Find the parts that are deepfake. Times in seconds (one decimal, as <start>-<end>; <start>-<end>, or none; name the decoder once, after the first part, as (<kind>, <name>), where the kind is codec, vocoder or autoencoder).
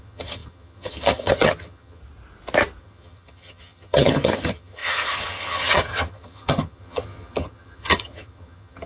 0.0-2.0 (vocoder, HiFi-GAN); 2.8-8.9